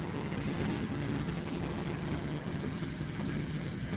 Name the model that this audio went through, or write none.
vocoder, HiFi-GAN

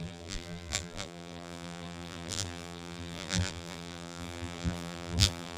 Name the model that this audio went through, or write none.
vocoder, BigVGAN v2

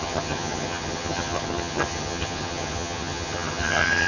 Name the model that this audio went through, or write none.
vocoder, HiFi-GAN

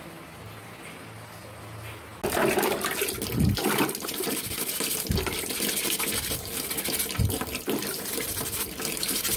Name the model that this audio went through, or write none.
none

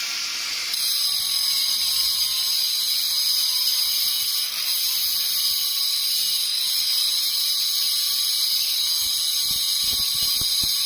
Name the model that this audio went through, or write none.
none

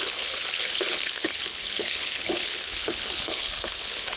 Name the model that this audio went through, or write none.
codec, HILCodec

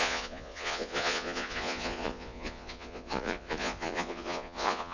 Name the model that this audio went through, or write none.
vocoder, Vocos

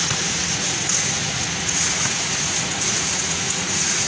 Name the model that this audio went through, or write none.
vocoder, Vocos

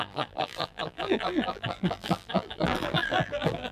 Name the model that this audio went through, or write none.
vocoder, BigVGAN v2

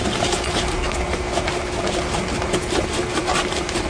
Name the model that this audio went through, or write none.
none